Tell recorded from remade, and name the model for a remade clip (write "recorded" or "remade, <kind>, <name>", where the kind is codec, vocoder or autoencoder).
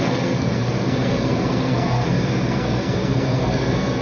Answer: remade, codec, SNAC